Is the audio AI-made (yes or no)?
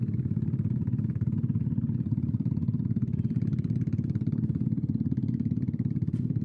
no